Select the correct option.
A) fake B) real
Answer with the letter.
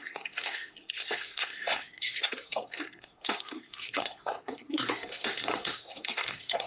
A